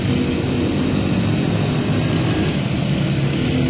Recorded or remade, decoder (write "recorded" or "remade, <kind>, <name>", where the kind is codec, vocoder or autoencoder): recorded